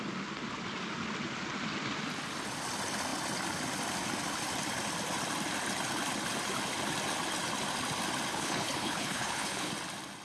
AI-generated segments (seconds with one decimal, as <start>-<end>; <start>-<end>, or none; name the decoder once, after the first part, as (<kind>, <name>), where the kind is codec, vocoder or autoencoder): 8.3-9.7 (codec, HILCodec)